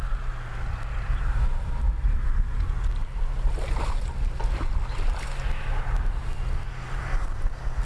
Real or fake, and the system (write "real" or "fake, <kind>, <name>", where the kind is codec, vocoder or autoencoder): real